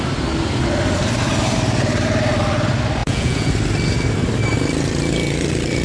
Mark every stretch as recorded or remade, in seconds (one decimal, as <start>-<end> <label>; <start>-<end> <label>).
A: 0.0-3.0 recorded; 3.0-3.5 remade; 3.5-5.8 recorded